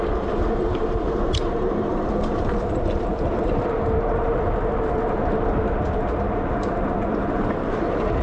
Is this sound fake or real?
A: fake